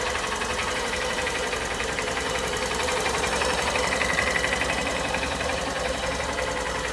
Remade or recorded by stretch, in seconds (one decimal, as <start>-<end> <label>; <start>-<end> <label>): 0.0-0.6 recorded; 0.6-3.7 remade; 3.7-4.9 recorded; 4.9-6.1 remade; 6.1-6.9 recorded